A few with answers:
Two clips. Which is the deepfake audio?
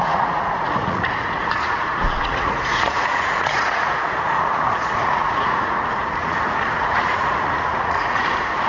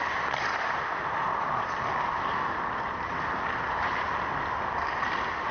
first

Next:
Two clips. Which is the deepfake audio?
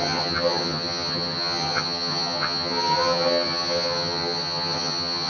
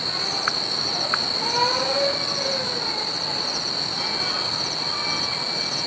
first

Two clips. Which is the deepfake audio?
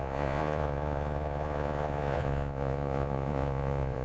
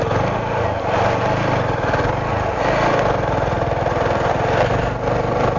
first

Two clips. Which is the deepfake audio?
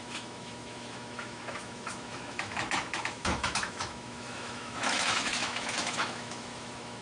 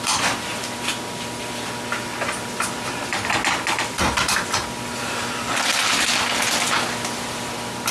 first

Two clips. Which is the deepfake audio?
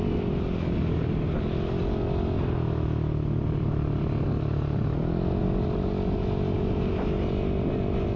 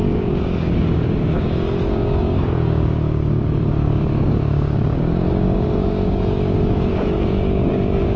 second